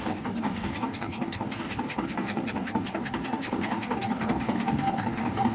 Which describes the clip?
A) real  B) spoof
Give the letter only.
B